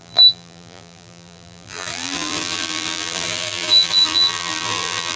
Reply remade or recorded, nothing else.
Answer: remade